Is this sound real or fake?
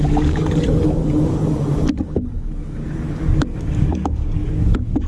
fake